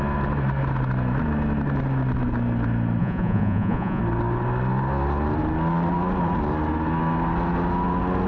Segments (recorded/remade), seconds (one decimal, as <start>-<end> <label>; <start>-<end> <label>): 0.0-3.0 recorded; 3.0-4.0 remade; 4.0-8.3 recorded